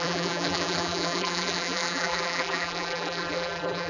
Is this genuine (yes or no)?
no